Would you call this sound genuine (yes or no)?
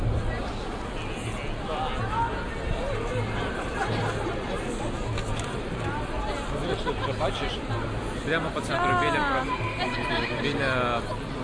yes